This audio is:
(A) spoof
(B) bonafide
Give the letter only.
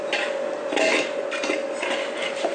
B